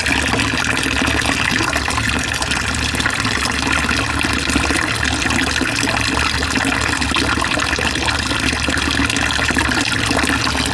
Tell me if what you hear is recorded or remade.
recorded